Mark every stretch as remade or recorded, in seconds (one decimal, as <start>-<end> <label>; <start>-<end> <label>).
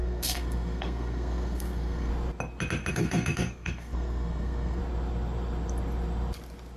0.0-2.1 remade; 2.1-2.9 recorded; 2.9-4.8 remade; 4.8-6.8 recorded